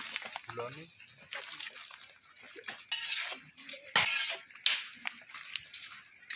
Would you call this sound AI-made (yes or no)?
no